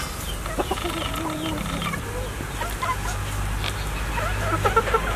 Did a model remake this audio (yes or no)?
no